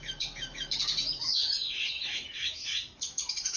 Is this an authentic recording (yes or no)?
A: no